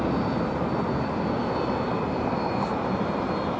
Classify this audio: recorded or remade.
recorded